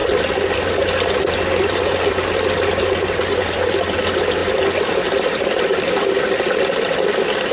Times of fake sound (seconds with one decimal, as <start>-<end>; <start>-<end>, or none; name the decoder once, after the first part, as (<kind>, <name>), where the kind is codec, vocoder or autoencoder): none